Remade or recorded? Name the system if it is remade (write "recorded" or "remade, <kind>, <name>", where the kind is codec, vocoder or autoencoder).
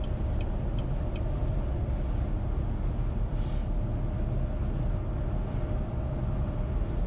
recorded